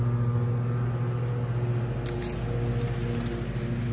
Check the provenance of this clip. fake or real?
real